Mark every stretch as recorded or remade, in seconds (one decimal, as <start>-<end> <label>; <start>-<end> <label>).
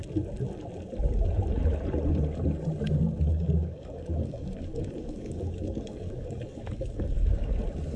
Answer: 0.0-3.3 recorded; 3.3-7.5 remade; 7.5-8.0 recorded